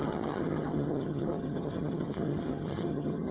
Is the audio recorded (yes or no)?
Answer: no